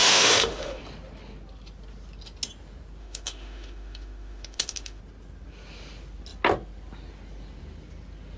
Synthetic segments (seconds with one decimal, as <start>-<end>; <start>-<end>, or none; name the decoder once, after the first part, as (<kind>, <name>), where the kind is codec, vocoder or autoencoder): 0.0-0.8 (autoencoder, DAC-VAE); 3.0-5.0

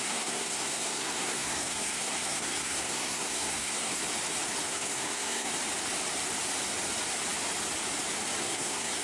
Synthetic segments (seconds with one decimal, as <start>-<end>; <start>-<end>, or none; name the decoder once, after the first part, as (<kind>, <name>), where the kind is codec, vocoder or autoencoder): 0.0-4.0 (codec, SNAC); 4.6-5.5; 8.4-9.0

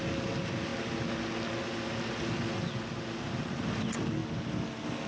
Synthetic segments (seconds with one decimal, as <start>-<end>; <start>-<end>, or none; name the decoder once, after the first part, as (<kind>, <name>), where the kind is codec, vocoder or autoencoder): none